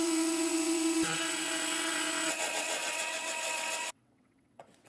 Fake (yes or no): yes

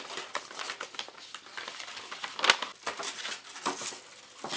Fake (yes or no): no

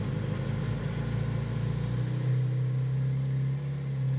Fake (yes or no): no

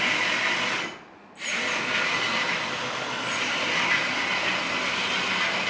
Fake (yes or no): no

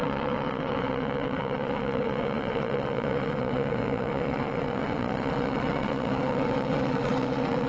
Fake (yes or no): yes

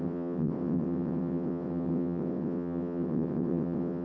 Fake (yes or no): yes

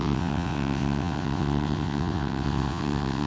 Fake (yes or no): yes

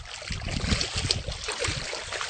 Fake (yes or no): no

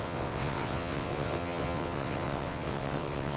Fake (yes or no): yes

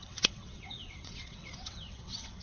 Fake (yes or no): yes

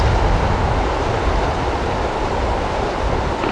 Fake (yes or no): no